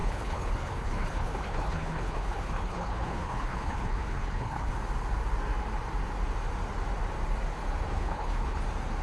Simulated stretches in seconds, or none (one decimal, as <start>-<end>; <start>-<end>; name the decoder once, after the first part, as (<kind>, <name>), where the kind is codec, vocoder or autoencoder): 0.0-4.7 (codec, HILCodec); 7.9-8.6